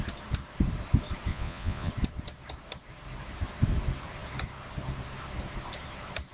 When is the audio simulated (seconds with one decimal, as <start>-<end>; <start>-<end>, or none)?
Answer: 1.3-1.9